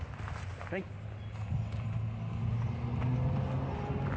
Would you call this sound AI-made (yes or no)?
no